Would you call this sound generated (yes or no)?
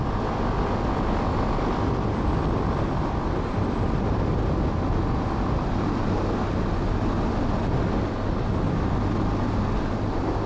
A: no